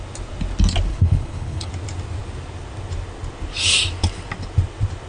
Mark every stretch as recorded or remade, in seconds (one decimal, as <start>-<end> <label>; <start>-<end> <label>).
0.0-0.9 recorded; 0.9-1.7 remade; 1.7-5.1 recorded